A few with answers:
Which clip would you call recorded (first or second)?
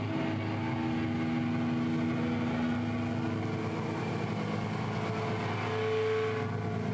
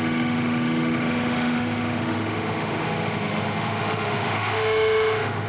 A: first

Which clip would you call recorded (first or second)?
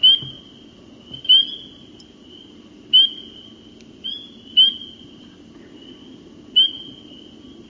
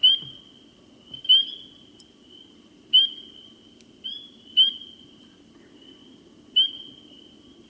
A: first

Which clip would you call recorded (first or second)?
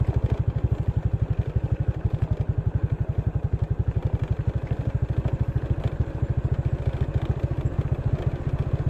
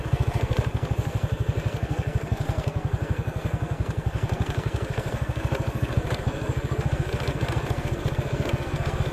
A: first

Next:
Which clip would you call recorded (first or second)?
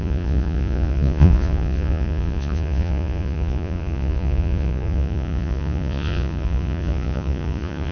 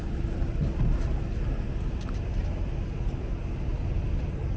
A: second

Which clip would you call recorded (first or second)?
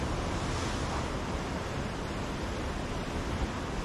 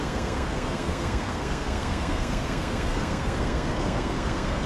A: first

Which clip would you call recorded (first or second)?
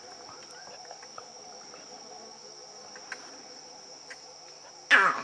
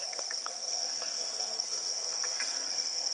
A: first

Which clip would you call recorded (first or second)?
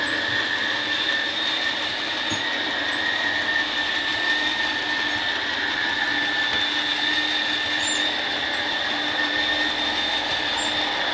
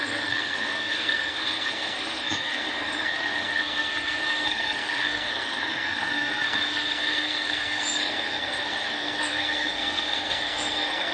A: first